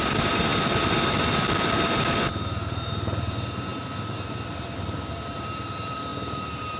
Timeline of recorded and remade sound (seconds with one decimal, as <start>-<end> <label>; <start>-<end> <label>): 0.0-0.5 remade; 0.5-2.2 recorded; 2.2-6.8 remade